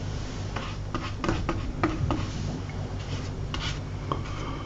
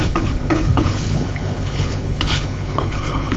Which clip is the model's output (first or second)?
second